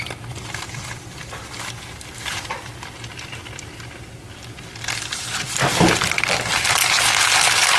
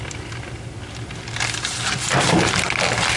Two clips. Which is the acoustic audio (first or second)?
second